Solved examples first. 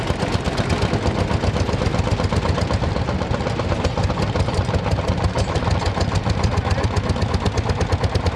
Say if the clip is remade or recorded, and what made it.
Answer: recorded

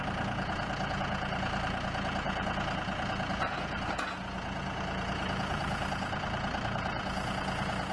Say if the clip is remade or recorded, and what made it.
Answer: remade, vocoder, Vocos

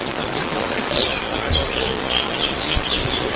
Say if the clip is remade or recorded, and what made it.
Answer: remade, vocoder, Vocos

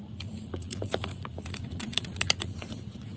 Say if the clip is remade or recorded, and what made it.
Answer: remade, vocoder, Vocos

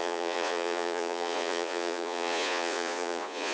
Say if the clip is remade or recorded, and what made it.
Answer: remade, vocoder, Vocos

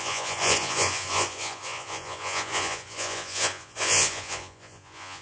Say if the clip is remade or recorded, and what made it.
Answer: remade, vocoder, Vocos